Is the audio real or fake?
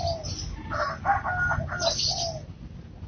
real